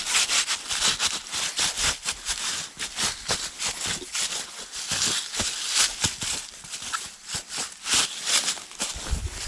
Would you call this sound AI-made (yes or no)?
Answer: no